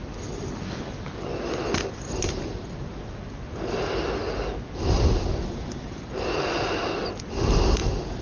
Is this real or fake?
real